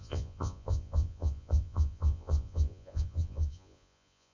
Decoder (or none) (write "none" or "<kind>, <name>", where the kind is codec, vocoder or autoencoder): vocoder, Vocos